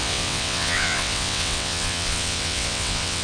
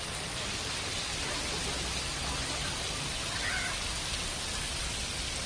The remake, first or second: first